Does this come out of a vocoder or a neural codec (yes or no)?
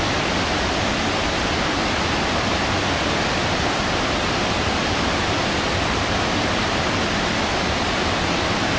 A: no